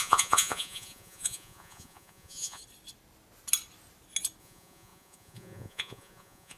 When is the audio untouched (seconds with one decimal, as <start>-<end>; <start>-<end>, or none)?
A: 2.6-4.4